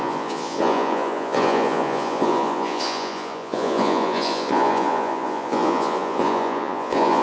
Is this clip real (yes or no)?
no